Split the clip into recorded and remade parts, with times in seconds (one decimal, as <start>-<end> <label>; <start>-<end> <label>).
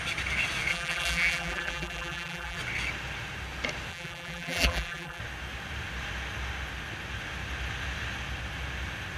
0.0-0.7 recorded; 0.7-2.6 remade; 2.6-3.9 recorded; 3.9-5.2 remade; 5.2-9.2 recorded